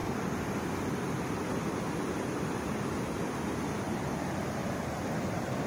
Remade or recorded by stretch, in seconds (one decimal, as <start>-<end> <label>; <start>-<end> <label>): 0.0-2.9 remade; 2.9-5.7 recorded